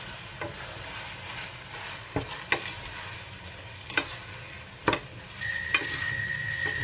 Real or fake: real